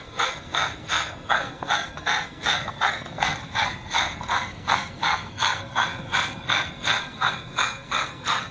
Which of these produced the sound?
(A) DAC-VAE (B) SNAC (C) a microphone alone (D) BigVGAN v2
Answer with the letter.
B